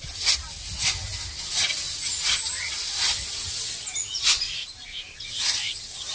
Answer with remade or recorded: recorded